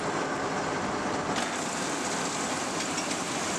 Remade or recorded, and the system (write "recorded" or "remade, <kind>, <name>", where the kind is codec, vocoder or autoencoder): recorded